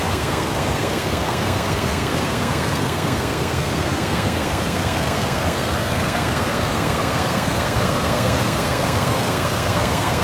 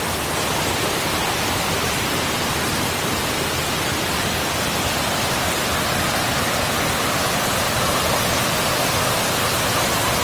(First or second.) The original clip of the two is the second